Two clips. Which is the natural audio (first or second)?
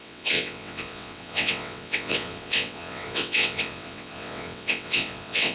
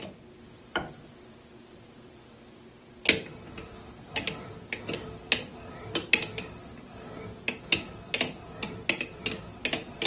second